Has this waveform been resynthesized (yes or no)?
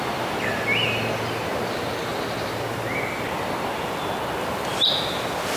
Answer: yes